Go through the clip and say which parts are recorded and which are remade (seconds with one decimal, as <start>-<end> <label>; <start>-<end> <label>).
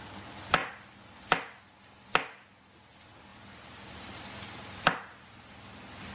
0.0-6.1 recorded